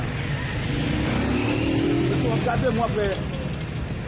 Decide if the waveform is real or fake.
real